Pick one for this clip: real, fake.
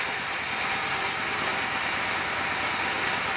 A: real